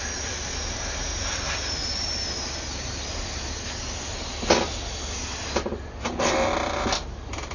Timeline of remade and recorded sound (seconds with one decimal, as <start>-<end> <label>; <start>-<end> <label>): 0.0-7.5 recorded